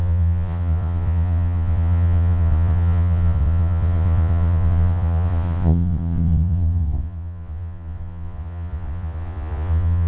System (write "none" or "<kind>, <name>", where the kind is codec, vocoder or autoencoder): vocoder, Vocos